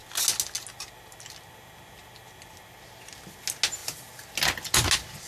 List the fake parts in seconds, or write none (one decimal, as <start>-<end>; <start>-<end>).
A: none